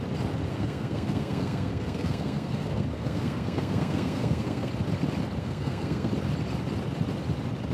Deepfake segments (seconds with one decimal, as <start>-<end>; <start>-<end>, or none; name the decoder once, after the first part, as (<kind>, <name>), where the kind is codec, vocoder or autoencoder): 0.5-4.7 (codec, SNAC); 5.4-6.1